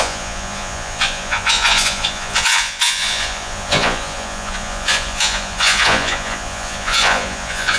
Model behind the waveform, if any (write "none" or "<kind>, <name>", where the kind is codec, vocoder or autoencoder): vocoder, Vocos